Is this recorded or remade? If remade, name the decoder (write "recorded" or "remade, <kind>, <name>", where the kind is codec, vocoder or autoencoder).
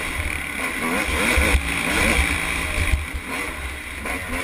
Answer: recorded